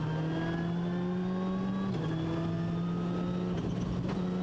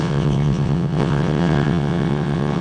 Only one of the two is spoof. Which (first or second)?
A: second